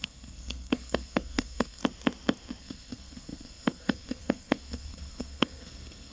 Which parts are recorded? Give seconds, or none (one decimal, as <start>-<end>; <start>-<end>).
1.8-2.6